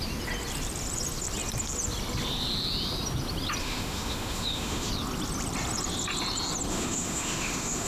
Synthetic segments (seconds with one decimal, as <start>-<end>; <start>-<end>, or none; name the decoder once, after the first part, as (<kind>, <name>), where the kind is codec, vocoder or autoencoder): 3.6-4.9 (autoencoder, DAC-VAE); 6.7-7.9